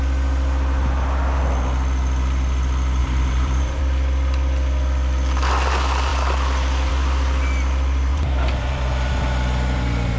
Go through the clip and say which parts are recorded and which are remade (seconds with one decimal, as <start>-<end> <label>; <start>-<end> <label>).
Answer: 0.0-3.0 recorded; 3.0-3.8 remade; 3.8-8.1 recorded; 8.1-9.1 remade; 9.1-10.2 recorded